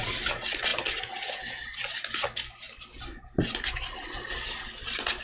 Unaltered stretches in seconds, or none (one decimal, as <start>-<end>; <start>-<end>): 0.0-5.2